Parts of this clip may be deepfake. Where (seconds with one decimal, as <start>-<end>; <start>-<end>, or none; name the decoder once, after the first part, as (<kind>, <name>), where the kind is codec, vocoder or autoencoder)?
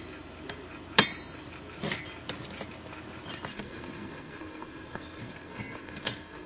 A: 3.5-6.5 (codec, SNAC)